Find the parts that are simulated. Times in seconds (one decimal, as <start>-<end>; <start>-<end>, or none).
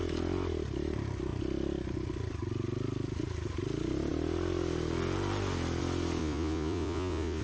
6.2-7.4